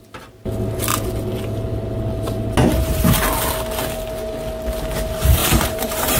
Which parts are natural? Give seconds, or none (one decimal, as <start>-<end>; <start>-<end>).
0.0-2.6; 3.2-5.4